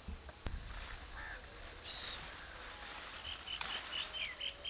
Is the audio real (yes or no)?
yes